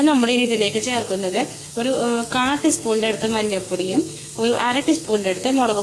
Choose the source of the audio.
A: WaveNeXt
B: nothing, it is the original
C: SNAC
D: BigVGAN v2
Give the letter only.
C